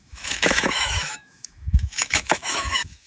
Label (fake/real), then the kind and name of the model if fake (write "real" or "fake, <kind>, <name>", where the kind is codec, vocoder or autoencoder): fake, autoencoder, DAC-VAE